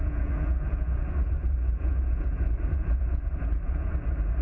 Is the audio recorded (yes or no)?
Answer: no